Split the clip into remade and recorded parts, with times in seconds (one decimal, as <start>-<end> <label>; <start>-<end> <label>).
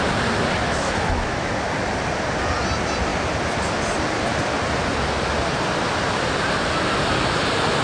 0.0-0.6 recorded; 0.6-1.5 remade; 1.5-7.8 recorded